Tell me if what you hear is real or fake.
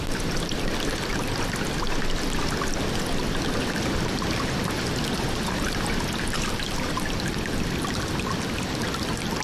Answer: real